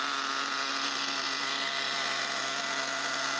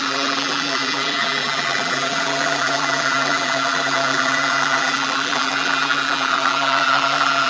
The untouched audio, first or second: first